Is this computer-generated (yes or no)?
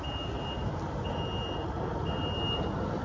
no